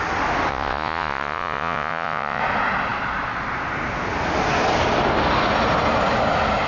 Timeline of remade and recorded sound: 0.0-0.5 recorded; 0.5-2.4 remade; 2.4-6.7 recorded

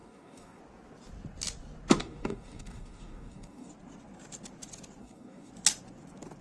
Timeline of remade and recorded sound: 0.0-0.6 remade; 0.6-2.0 recorded; 2.0-3.7 remade; 3.7-5.0 recorded; 5.0-5.5 remade; 5.5-6.4 recorded

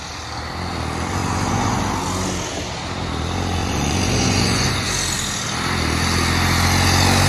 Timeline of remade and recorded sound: 0.0-1.2 recorded; 1.2-1.8 remade; 1.8-3.6 recorded; 3.6-4.9 remade; 4.9-7.3 recorded